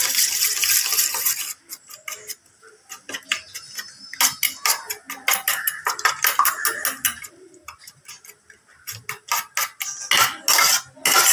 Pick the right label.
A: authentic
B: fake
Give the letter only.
A